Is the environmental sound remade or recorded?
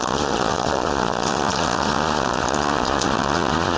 remade